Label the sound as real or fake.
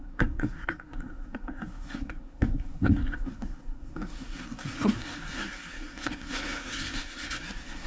fake